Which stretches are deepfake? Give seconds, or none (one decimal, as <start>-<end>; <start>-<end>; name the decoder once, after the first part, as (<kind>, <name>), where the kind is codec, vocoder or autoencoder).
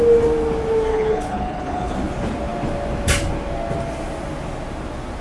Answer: 0.9-1.9 (codec, HILCodec)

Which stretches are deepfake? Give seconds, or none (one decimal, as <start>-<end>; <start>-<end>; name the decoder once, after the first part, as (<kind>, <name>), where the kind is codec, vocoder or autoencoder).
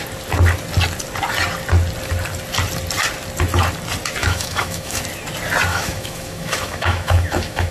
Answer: 4.2-5.0 (autoencoder, DAC-VAE); 5.7-7.7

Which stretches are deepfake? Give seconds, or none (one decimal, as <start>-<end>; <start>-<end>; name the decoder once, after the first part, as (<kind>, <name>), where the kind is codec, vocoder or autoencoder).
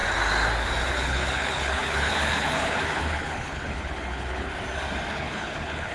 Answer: 0.9-4.5 (codec, HILCodec); 5.1-5.9